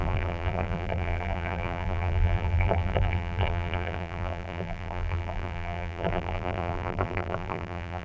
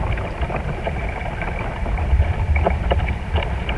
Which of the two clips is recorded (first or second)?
second